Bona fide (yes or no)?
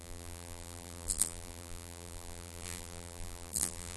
no